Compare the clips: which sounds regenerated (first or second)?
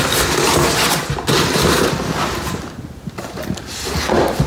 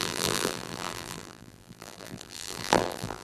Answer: second